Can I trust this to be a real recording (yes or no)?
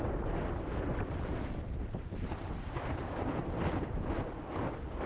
yes